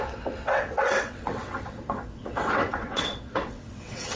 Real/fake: fake